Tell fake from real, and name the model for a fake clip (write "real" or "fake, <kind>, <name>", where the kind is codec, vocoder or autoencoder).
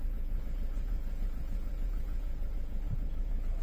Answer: fake, vocoder, Vocos